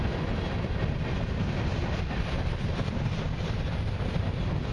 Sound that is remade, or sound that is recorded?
remade